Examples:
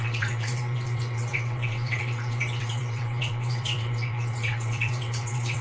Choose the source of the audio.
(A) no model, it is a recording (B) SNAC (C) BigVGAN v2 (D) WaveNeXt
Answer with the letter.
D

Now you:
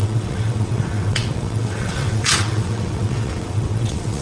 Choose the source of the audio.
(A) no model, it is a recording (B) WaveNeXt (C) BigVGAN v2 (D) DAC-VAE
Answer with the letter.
B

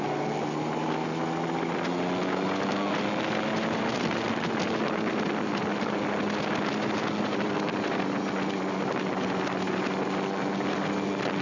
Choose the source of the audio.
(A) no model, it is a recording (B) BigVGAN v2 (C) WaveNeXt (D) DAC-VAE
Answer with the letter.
A